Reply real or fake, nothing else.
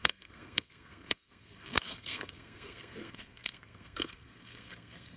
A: fake